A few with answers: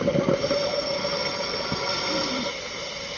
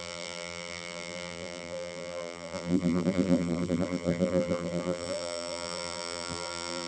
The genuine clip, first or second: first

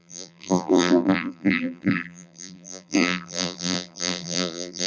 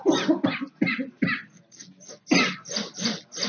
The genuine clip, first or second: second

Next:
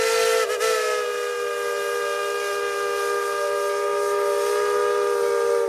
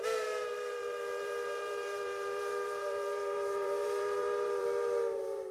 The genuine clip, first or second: first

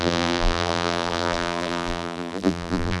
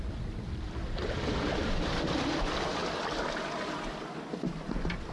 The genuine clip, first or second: second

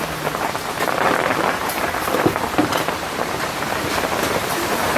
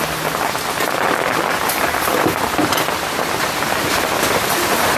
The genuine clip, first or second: second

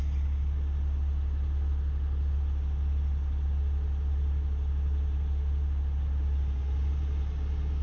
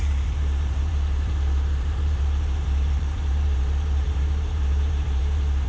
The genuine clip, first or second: first